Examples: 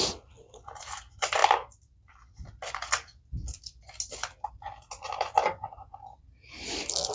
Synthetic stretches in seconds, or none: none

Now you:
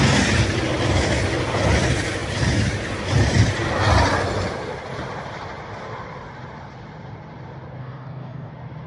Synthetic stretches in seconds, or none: 7.8-8.5 (codec, DAC)